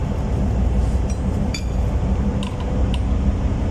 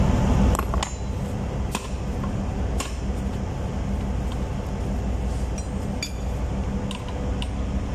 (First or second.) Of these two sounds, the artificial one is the first